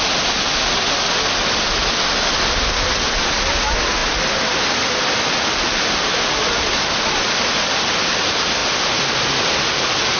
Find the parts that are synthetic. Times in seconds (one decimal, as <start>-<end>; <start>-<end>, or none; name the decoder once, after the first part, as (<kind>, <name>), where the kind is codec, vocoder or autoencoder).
none